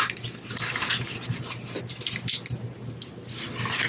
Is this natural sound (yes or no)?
yes